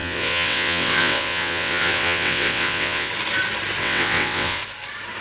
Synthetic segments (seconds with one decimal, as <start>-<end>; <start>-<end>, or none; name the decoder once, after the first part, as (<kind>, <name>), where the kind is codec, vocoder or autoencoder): 0.0-3.1 (vocoder, WaveNeXt); 3.8-4.6